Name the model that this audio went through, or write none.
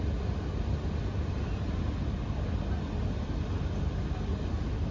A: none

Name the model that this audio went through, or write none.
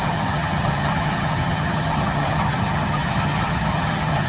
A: vocoder, HiFi-GAN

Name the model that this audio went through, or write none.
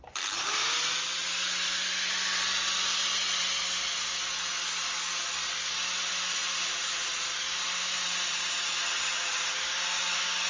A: none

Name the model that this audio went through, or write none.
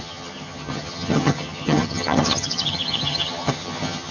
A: vocoder, HiFi-GAN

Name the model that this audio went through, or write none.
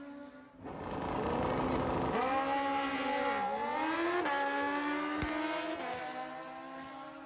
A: none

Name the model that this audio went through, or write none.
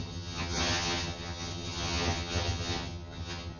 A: vocoder, HiFi-GAN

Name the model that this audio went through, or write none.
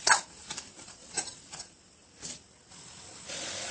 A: none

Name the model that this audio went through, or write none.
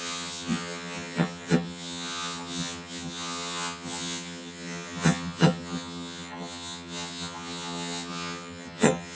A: vocoder, HiFi-GAN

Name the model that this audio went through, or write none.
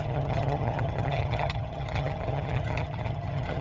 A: vocoder, HiFi-GAN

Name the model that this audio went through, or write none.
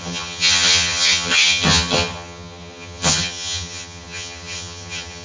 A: vocoder, HiFi-GAN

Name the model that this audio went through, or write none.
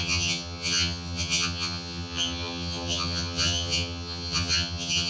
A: vocoder, HiFi-GAN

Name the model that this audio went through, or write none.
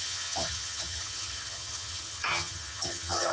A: vocoder, HiFi-GAN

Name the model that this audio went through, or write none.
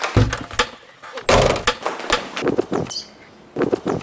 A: none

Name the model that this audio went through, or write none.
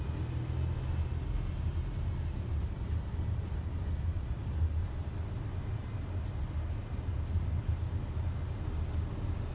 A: none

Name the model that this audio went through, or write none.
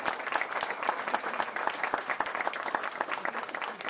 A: none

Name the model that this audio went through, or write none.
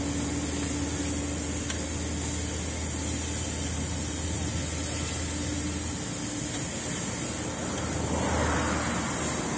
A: none